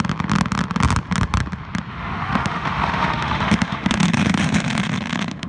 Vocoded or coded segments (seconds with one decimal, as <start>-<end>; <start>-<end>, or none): 1.9-5.5